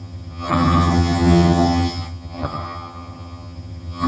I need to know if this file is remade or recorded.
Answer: remade